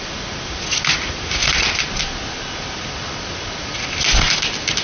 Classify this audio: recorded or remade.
recorded